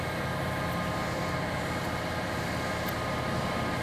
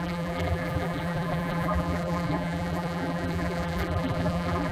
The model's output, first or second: second